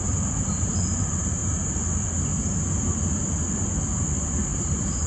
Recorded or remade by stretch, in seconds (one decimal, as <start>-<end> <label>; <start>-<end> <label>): 0.0-1.4 remade; 1.4-4.0 recorded; 4.0-5.1 remade